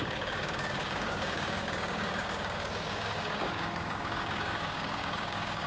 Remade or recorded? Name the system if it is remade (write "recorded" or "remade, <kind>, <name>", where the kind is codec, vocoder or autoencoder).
remade, codec, DAC